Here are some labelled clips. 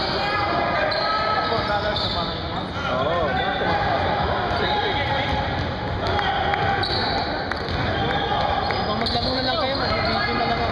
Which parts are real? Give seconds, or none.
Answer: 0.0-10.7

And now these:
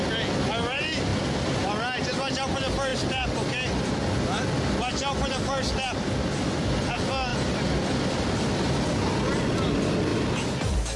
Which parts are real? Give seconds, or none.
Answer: 0.0-2.9; 3.9-7.3; 9.0-10.1

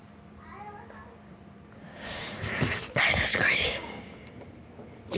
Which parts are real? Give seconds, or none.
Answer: 0.0-1.9; 2.8-3.3; 4.4-5.2

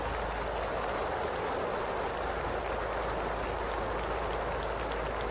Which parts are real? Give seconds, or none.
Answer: 0.0-5.3

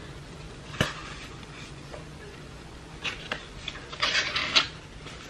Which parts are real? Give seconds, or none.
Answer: 4.4-5.3